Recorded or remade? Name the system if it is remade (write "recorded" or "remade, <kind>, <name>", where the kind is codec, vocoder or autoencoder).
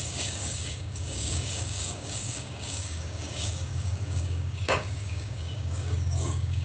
remade, codec, DAC